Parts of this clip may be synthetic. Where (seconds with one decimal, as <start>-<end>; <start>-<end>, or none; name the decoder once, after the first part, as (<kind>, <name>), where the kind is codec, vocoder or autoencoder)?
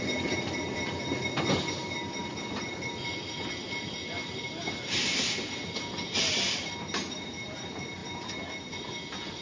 none